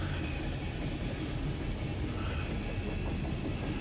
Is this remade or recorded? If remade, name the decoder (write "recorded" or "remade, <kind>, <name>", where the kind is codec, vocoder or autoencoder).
recorded